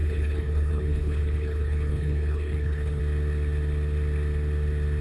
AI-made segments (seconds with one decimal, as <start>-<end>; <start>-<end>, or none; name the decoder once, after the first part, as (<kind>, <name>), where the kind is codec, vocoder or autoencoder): 0.0-3.0 (codec, HILCodec)